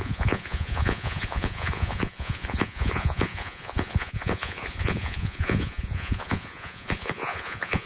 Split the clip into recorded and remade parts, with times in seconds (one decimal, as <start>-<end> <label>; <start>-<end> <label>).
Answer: 0.0-7.9 remade